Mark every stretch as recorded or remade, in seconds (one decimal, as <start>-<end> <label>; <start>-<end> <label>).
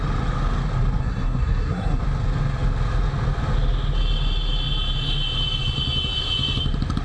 0.0-1.0 recorded; 1.0-2.0 remade; 2.0-7.0 recorded